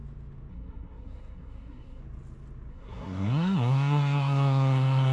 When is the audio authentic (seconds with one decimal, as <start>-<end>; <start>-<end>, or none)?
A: 0.0-0.5; 2.0-2.7

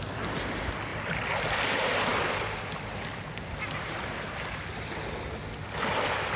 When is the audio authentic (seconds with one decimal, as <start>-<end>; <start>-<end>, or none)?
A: 0.0-6.4